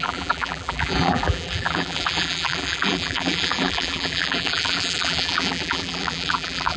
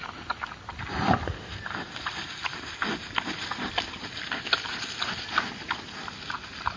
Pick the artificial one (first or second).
first